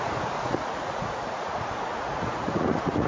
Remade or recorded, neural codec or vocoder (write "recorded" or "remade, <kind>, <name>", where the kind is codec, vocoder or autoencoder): remade, vocoder, Vocos